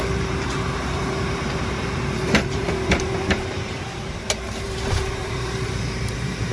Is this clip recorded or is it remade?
remade